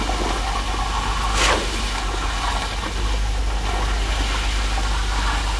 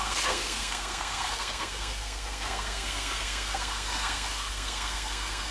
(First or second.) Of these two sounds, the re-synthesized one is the second